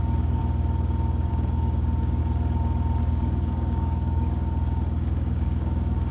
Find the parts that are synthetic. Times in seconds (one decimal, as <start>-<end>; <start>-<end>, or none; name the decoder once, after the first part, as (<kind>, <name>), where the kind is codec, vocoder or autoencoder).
0.0-0.4 (codec, DAC); 1.3-2.2; 3.0-6.1